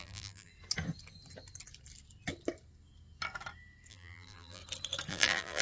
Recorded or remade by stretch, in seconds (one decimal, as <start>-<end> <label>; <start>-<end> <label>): 0.0-0.5 remade; 0.5-3.9 recorded; 3.9-4.6 remade; 4.6-5.1 recorded; 5.1-5.6 remade